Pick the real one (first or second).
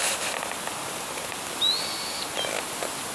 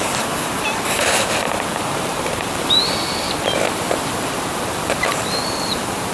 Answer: first